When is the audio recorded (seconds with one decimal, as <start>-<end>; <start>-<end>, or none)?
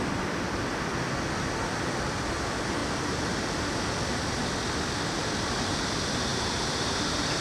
0.0-2.8; 3.6-6.3